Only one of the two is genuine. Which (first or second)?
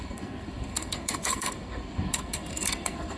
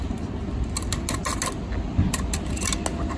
second